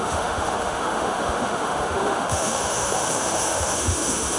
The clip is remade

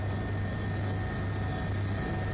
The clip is recorded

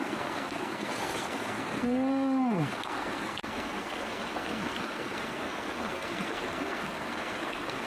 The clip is remade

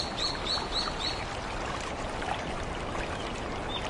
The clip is recorded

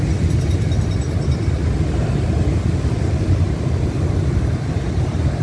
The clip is recorded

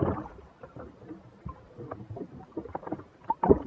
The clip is remade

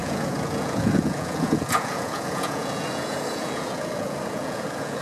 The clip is remade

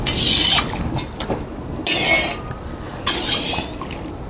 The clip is recorded